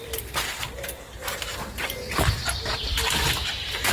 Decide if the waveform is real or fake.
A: real